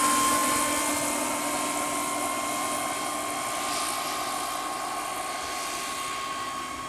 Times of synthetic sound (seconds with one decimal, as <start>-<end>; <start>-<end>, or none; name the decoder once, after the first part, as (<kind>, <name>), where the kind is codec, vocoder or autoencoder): none